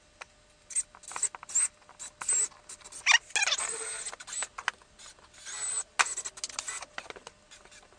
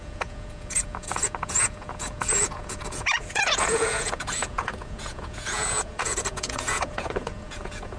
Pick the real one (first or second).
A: first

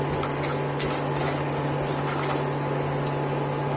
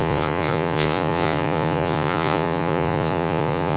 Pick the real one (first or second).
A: first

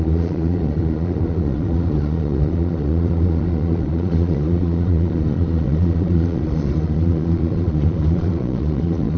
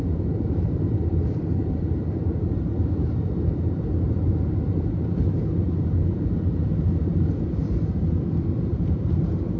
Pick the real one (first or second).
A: second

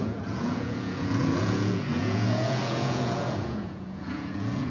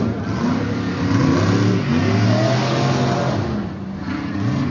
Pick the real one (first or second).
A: second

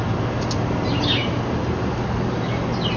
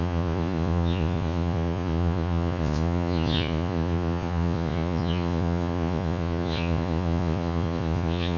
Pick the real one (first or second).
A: first